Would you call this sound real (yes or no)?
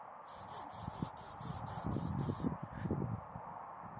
yes